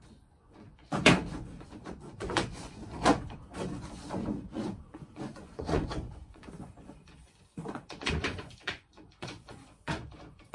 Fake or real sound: fake